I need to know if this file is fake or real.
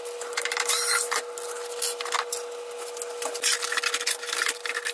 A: real